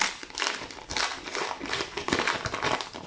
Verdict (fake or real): real